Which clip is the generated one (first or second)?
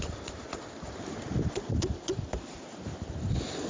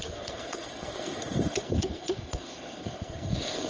second